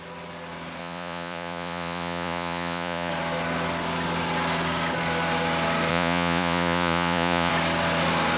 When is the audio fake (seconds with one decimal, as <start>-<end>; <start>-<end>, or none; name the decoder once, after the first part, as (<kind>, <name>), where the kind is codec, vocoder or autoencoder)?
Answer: 0.8-3.1 (vocoder, Vocos); 5.9-7.5